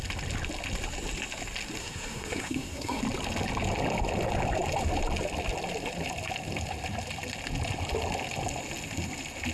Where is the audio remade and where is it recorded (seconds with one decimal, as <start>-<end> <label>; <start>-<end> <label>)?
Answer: 0.0-1.8 recorded; 1.8-3.0 remade; 3.0-9.5 recorded